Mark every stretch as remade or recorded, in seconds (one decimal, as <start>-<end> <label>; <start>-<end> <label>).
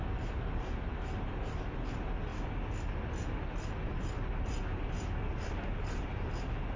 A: 0.0-6.8 recorded